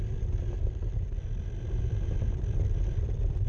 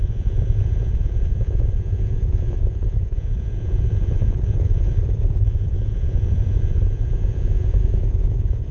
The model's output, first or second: second